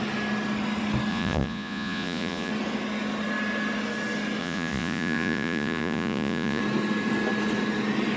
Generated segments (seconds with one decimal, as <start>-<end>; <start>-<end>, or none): 1.1-2.5; 4.4-6.6